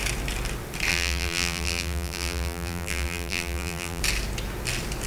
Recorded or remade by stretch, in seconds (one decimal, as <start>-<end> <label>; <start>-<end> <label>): 0.0-0.9 recorded; 0.9-4.0 remade; 4.0-5.1 recorded